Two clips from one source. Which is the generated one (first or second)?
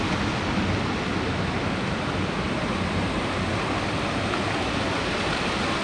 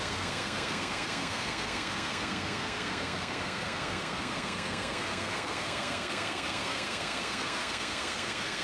second